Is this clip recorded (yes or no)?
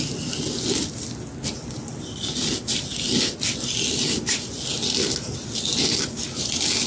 yes